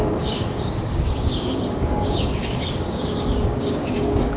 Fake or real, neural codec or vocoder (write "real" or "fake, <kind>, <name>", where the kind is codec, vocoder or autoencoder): fake, codec, DAC